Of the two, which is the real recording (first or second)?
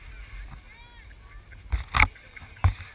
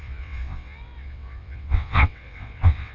first